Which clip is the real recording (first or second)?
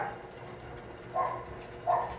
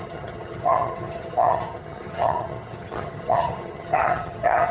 first